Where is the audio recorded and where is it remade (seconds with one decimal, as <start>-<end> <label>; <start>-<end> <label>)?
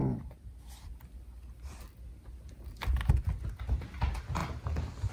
0.0-5.1 recorded